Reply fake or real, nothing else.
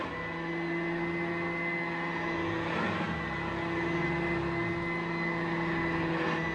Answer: real